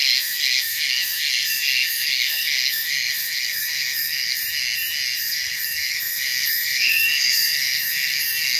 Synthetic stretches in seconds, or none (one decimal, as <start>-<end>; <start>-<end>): 0.0-4.4; 5.2-8.6